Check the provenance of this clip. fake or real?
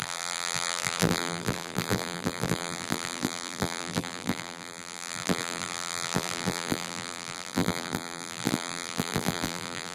fake